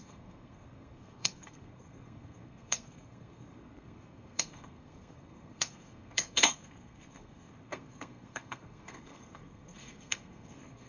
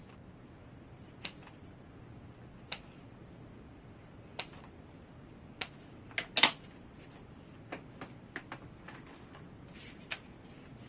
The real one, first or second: second